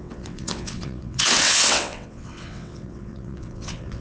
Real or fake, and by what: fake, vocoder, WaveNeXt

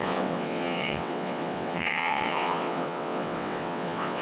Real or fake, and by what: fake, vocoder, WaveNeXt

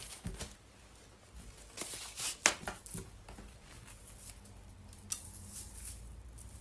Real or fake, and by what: real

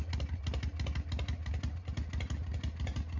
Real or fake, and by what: real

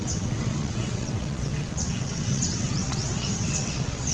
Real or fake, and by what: fake, vocoder, WaveNeXt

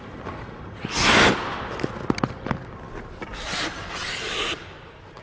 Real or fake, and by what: real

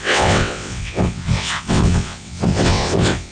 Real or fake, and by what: fake, vocoder, WaveNeXt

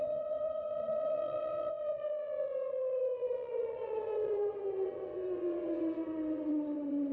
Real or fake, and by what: fake, vocoder, WaveNeXt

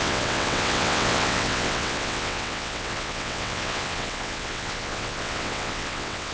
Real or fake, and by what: fake, vocoder, WaveNeXt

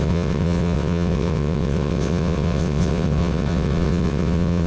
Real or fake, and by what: fake, vocoder, WaveNeXt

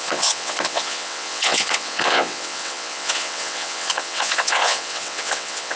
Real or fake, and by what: fake, vocoder, WaveNeXt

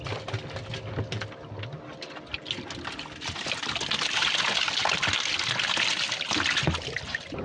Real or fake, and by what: real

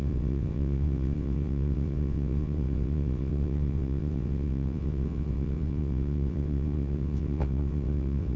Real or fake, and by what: fake, vocoder, WaveNeXt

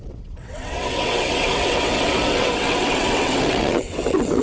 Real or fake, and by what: fake, vocoder, WaveNeXt